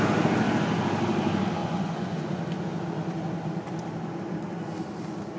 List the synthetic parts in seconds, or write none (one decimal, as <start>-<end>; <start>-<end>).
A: 1.6-2.4